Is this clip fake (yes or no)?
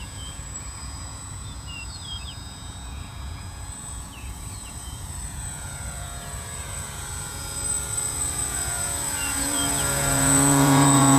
yes